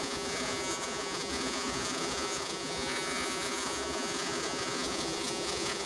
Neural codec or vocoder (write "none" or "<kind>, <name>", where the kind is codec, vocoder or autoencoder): vocoder, Vocos